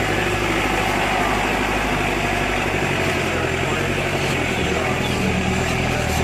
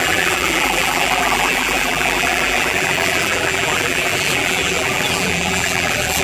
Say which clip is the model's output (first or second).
second